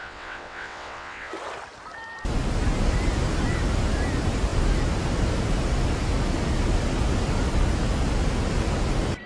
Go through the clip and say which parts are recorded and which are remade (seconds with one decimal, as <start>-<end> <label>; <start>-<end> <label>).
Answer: 0.0-1.3 remade; 1.3-9.3 recorded